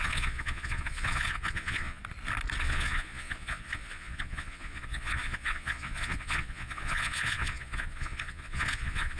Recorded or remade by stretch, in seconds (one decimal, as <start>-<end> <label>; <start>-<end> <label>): 0.0-2.0 remade; 2.0-2.6 recorded; 2.6-9.2 remade